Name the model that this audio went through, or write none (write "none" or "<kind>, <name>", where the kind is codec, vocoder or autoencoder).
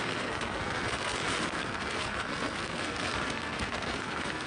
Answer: codec, SNAC